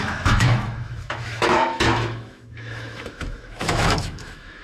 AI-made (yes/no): yes